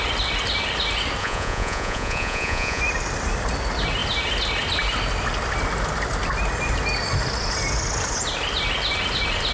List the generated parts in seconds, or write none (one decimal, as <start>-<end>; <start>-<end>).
1.2-2.8